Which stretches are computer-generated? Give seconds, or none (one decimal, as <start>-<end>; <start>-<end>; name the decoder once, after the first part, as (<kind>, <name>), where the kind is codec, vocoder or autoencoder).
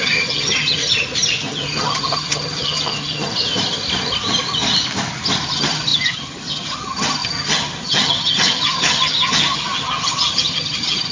0.0-0.8 (vocoder, HiFi-GAN); 1.4-3.3; 5.5-11.1